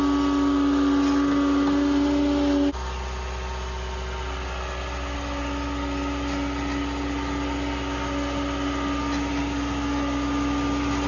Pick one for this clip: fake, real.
real